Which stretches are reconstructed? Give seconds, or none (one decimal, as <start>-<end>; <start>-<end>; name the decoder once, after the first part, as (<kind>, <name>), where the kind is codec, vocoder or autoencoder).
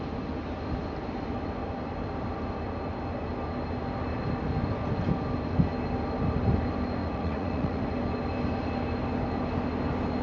7.0-7.8 (vocoder, Vocos)